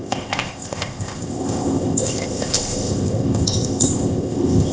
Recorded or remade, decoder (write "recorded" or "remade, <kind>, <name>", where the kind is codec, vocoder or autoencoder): remade, codec, ZipCodec